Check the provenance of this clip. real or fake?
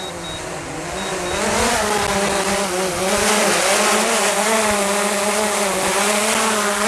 real